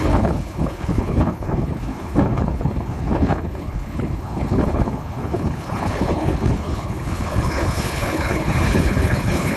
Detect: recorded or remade remade